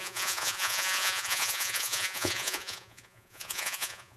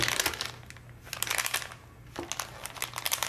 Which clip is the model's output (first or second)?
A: first